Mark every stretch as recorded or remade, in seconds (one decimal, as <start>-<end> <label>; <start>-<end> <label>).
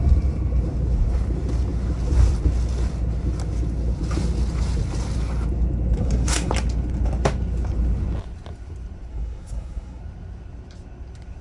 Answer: 0.0-6.0 recorded; 6.0-6.5 remade; 6.5-9.1 recorded; 9.1-10.0 remade; 10.0-11.4 recorded